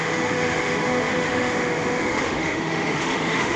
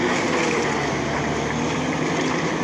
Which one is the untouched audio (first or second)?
second